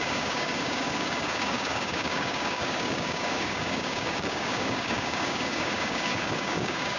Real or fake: fake